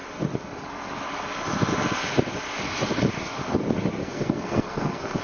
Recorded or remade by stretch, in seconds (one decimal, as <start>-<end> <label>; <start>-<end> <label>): 0.0-4.0 recorded; 4.0-5.2 remade